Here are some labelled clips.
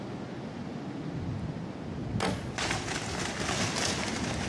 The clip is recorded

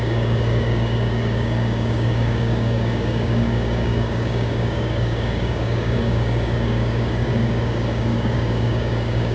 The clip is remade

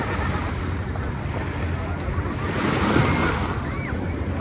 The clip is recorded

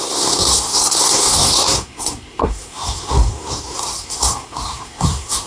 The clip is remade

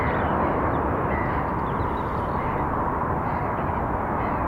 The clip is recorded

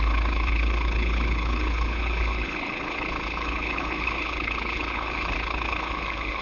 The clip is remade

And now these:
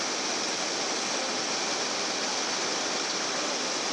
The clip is recorded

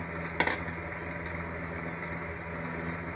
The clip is recorded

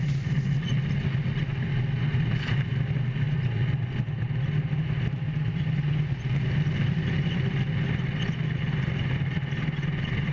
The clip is recorded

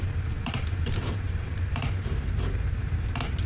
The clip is remade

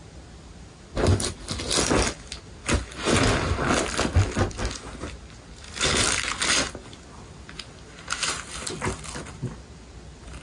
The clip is recorded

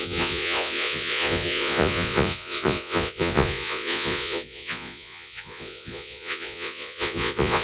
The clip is remade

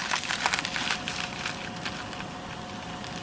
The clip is recorded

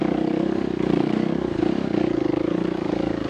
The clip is remade